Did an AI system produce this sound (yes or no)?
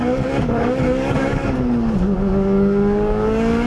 yes